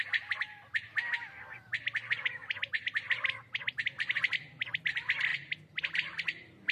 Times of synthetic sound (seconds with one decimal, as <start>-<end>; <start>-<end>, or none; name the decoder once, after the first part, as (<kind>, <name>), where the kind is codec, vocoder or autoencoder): none